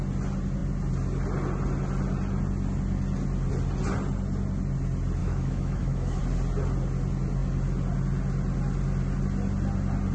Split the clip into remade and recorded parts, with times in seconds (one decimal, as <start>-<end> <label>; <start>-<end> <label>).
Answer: 0.0-5.2 recorded; 5.2-6.2 remade; 6.2-10.1 recorded